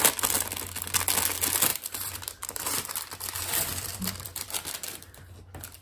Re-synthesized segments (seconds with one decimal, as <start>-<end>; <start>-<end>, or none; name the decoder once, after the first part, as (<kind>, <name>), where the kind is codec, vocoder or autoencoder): 1.7-5.2 (vocoder, BigVGAN v2)